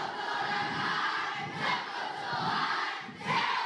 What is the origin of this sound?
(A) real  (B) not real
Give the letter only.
A